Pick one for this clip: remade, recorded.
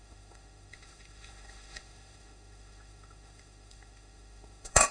remade